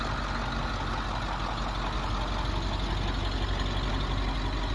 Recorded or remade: recorded